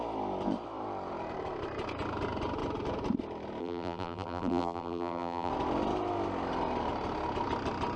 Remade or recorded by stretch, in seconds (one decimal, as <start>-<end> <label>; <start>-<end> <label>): 0.0-3.6 recorded; 3.6-5.5 remade; 5.5-8.0 recorded